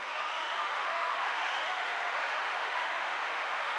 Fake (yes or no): yes